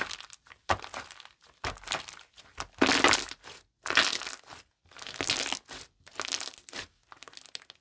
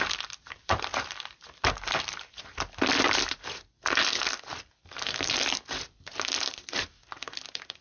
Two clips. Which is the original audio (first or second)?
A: first